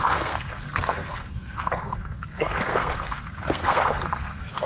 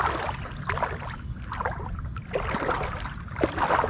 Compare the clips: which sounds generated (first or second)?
first